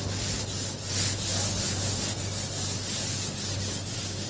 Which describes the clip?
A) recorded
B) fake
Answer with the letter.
A